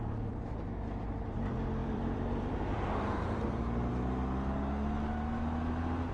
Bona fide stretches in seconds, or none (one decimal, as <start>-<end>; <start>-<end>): 0.0-1.8; 3.9-6.1